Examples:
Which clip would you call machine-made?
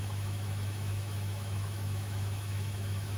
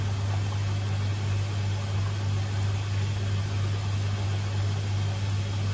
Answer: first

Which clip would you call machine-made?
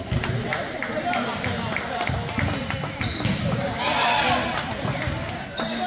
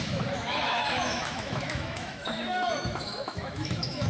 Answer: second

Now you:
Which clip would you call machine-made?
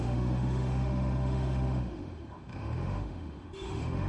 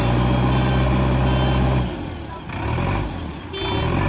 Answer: first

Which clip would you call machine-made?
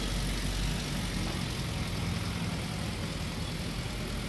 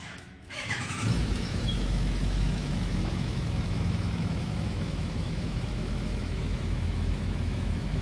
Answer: second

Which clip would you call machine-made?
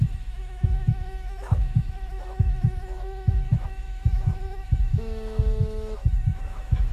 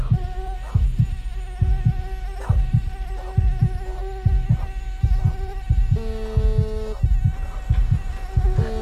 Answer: first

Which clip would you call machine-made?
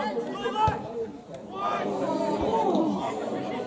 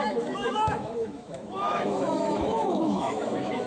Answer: second